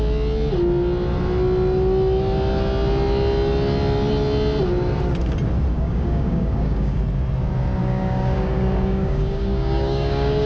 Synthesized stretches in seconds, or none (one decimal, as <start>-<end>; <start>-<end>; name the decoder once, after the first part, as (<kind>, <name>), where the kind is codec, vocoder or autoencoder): 5.7-7.0 (codec, DAC); 7.8-10.5